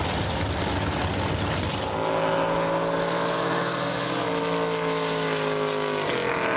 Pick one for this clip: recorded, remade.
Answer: recorded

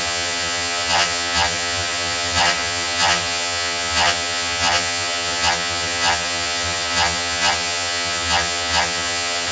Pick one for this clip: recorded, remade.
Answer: remade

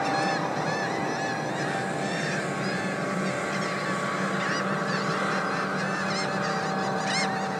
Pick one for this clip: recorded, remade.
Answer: recorded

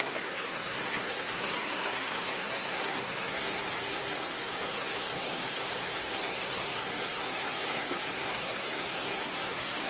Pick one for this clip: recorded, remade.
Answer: remade